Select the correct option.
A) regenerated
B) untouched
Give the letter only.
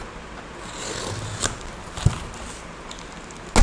B